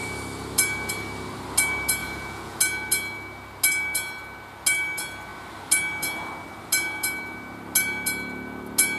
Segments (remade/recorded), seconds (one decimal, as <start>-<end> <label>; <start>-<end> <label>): 0.0-2.0 recorded; 2.0-2.6 remade; 2.6-9.0 recorded